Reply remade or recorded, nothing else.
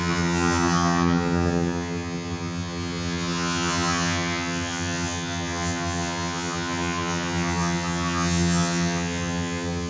remade